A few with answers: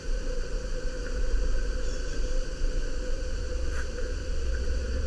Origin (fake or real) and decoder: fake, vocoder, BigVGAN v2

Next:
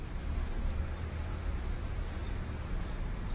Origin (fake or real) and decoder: fake, vocoder, BigVGAN v2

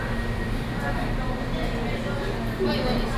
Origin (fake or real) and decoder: real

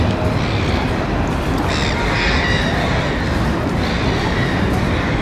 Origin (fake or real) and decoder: real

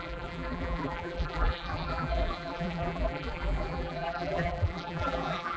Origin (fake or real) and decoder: fake, vocoder, BigVGAN v2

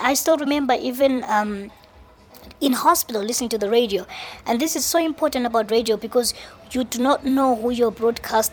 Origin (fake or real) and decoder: fake, vocoder, BigVGAN v2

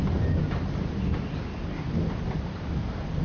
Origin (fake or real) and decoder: real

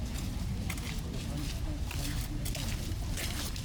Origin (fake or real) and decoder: fake, vocoder, BigVGAN v2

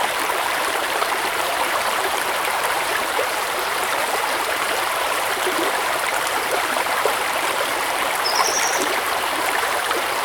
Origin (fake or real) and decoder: fake, vocoder, BigVGAN v2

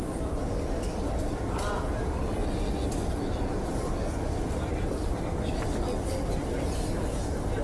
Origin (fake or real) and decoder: real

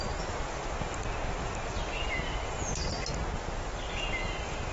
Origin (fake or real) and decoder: real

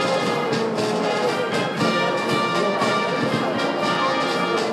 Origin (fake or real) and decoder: real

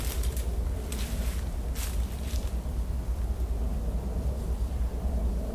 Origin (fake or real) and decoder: real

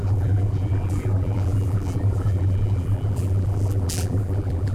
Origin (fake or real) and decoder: fake, vocoder, BigVGAN v2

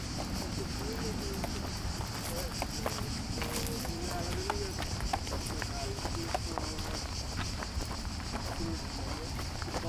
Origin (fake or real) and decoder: real